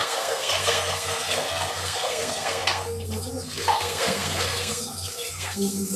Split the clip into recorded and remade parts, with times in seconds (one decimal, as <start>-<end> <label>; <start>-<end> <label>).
0.0-6.0 remade